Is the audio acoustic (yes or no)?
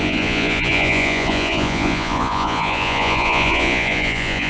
no